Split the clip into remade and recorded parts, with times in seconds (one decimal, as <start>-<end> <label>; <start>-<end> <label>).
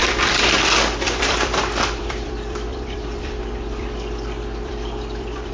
0.0-5.5 remade